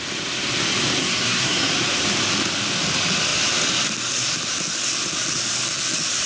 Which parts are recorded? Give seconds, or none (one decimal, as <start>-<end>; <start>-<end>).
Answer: 0.0-1.0; 1.7-6.3